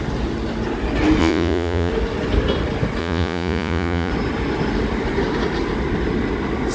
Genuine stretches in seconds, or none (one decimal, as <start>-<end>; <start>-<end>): 0.0-1.2; 1.9-3.0; 4.1-6.7